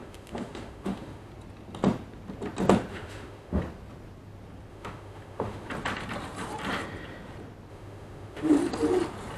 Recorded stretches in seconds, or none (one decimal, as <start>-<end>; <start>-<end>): 1.3-2.9; 3.6-4.7; 5.7-7.7; 8.5-9.4